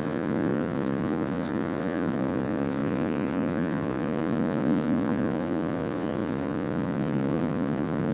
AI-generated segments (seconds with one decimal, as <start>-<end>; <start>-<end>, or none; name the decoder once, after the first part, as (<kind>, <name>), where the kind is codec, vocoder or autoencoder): 0.0-8.1 (vocoder, Vocos)